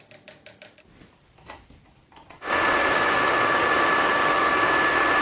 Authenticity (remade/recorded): recorded